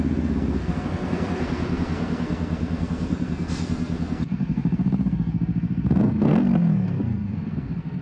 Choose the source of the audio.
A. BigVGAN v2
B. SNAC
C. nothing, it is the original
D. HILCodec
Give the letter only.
B